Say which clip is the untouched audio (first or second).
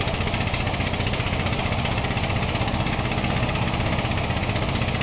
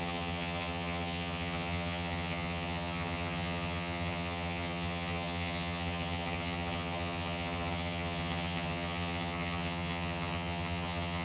first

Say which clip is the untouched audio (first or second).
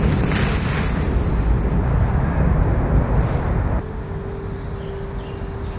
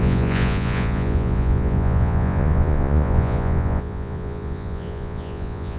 first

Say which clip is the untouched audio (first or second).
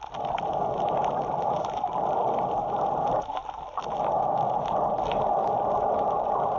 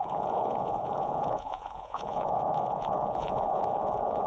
first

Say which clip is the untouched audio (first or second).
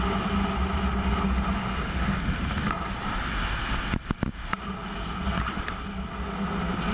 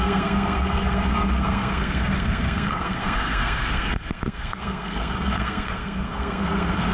first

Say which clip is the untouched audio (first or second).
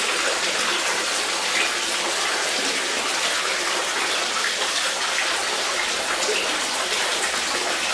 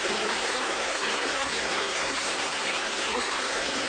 first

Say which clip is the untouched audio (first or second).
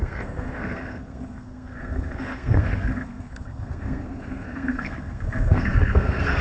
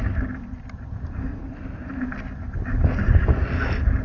second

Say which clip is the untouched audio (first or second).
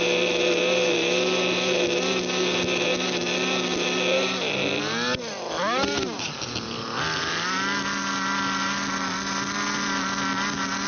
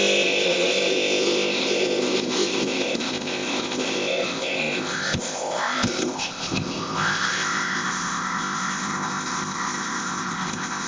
first